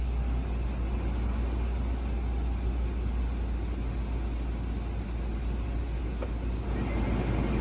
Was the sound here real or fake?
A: real